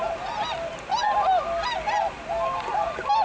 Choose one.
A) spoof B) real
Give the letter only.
B